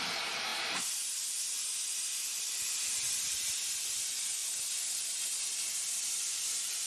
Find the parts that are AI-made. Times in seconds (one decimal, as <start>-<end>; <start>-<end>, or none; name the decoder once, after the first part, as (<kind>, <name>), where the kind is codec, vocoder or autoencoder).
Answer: none